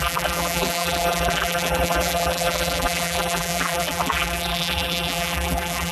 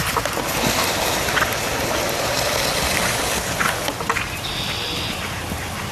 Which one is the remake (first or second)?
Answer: first